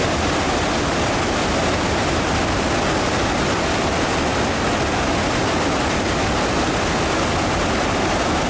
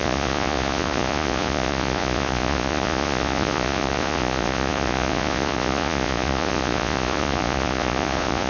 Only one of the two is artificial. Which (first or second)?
second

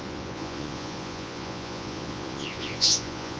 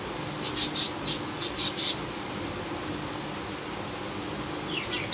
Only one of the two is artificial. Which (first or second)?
first